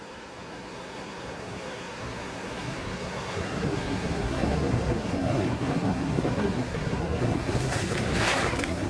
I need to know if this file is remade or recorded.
remade